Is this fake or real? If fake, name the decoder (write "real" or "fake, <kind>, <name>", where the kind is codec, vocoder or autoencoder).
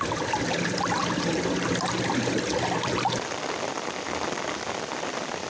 fake, vocoder, BigVGAN v2